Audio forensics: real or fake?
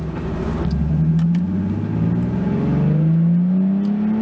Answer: real